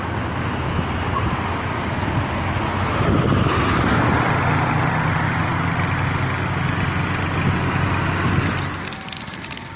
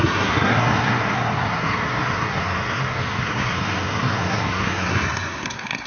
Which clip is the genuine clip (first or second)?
first